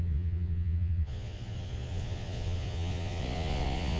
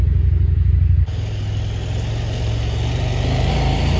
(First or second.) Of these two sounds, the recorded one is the second